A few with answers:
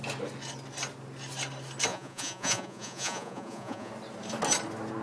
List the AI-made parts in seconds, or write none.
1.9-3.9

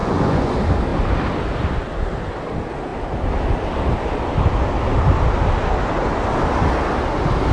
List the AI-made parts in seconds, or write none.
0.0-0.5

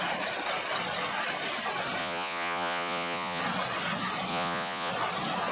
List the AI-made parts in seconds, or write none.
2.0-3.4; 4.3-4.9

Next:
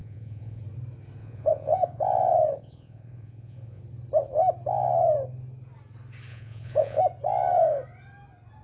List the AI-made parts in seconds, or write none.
0.0-0.6; 1.2-3.8; 6.3-7.0

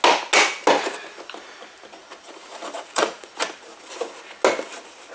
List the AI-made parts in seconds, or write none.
2.0-3.3